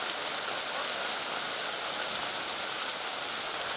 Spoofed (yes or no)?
no